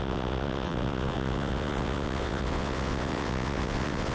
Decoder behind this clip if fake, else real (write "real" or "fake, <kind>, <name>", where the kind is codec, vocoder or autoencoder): fake, vocoder, WaveNeXt